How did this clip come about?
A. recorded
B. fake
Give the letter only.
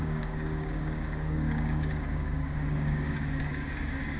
B